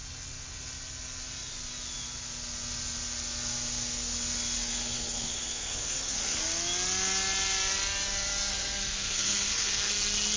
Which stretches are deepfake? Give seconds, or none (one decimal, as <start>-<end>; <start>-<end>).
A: 4.7-6.4; 8.5-9.9